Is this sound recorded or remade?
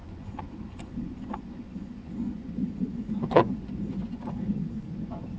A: remade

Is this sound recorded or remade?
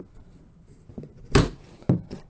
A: recorded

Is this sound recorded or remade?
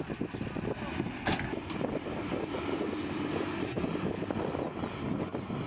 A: recorded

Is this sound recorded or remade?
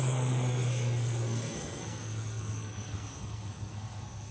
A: remade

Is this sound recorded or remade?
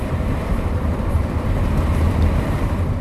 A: remade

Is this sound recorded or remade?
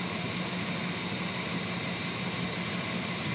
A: recorded